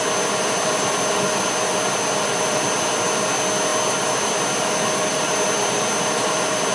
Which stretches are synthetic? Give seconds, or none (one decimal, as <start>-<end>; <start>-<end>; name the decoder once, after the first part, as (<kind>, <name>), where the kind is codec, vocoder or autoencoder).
none